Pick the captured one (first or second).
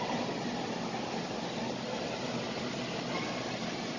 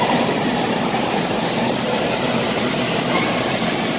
first